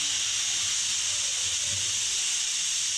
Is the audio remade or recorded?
recorded